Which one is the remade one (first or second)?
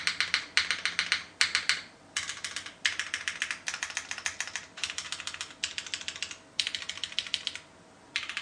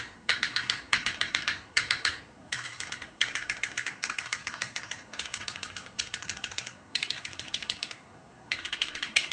second